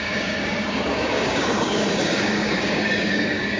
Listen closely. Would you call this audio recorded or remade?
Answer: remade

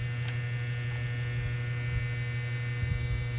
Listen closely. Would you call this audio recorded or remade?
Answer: recorded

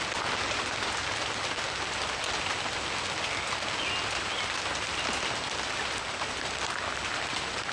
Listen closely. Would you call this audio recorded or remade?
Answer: recorded